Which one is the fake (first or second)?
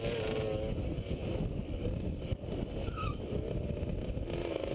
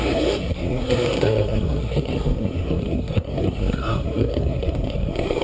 second